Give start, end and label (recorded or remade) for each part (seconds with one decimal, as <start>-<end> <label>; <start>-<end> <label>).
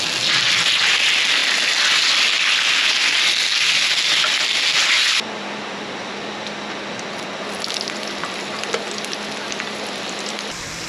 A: 0.0-10.9 recorded